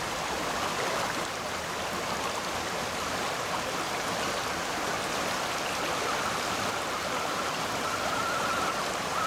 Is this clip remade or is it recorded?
recorded